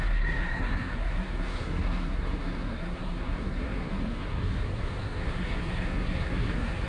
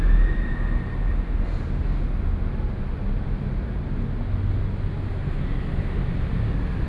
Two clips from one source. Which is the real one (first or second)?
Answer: second